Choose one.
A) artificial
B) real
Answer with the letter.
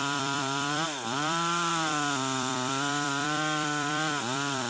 A